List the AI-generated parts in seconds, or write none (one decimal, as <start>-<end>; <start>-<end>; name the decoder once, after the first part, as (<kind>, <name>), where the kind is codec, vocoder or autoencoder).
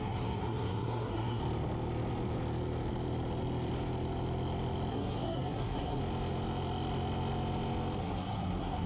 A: 0.0-1.4 (codec, SNAC); 4.9-6.0; 8.0-8.9